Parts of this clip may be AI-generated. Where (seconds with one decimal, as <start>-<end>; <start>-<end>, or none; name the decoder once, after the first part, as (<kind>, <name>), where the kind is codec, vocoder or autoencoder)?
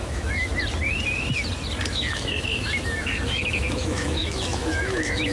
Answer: 0.0-0.5 (autoencoder, DAC-VAE); 1.9-5.3